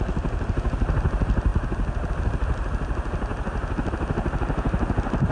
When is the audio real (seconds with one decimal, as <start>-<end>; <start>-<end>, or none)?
0.0-5.3